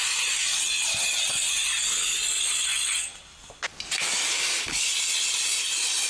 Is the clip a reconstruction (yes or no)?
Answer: no